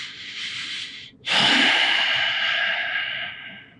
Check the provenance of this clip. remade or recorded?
recorded